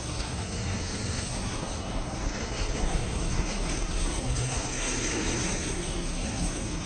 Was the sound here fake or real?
fake